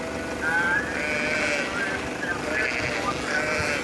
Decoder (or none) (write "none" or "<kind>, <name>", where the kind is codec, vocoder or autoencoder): none